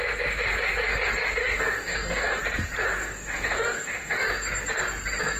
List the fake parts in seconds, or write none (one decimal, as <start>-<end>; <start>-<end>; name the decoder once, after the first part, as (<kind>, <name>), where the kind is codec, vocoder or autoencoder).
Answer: 1.4-2.4 (codec, DAC); 3.0-4.3